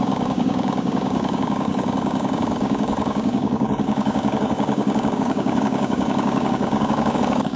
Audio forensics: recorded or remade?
remade